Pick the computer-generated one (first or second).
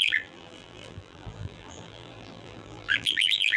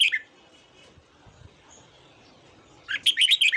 first